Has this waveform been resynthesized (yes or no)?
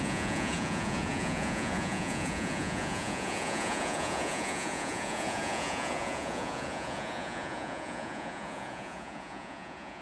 yes